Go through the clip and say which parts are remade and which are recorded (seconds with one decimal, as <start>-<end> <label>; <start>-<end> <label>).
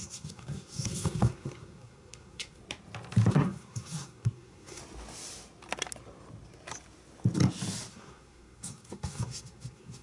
0.0-2.6 remade; 2.6-3.3 recorded; 3.3-4.8 remade; 4.8-7.9 recorded; 7.9-10.0 remade